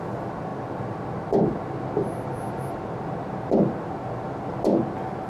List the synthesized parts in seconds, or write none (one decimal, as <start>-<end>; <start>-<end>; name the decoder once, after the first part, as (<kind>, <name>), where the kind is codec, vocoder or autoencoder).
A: none